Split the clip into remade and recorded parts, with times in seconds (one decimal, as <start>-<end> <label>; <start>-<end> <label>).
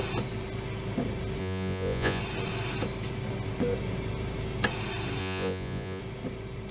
0.0-1.4 recorded; 1.4-2.2 remade; 2.2-5.2 recorded; 5.2-6.0 remade; 6.0-6.7 recorded